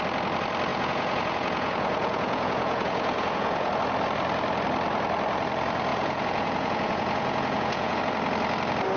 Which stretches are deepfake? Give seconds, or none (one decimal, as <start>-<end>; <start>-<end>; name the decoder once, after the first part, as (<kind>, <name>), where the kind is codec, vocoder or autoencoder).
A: 0.7-3.7 (vocoder, Vocos); 5.9-8.0